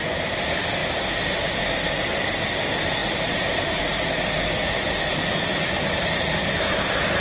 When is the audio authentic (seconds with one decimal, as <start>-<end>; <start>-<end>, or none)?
0.0-3.0; 3.8-7.2